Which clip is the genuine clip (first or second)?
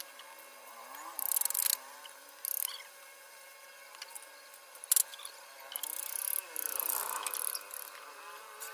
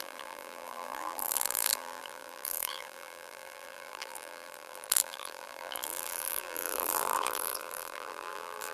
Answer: first